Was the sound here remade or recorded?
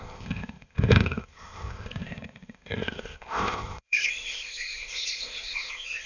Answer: remade